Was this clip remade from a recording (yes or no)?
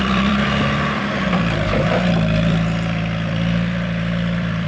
yes